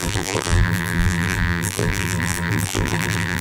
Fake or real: fake